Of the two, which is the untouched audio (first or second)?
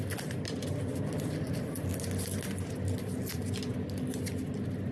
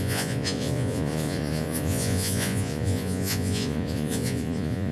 first